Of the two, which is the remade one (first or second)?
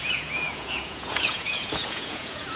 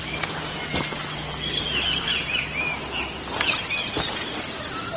first